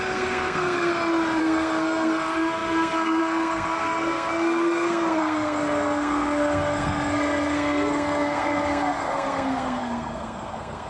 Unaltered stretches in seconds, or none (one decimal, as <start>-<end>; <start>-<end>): 0.9-1.4